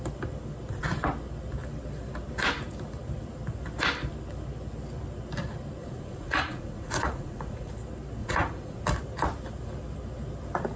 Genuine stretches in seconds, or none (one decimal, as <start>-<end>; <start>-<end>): 0.0-5.8; 7.7-8.2; 8.8-10.8